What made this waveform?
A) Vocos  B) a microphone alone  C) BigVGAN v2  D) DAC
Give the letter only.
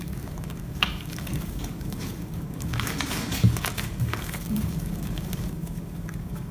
D